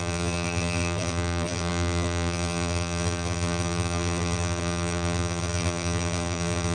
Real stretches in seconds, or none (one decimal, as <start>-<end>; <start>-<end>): none